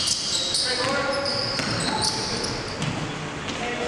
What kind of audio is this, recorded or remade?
recorded